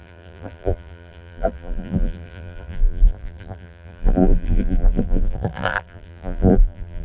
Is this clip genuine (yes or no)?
no